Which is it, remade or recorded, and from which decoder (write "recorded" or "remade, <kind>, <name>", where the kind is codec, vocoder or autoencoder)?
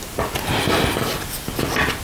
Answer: recorded